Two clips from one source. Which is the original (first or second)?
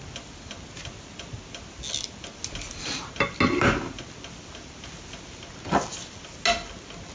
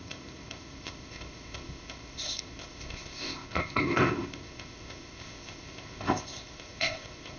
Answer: first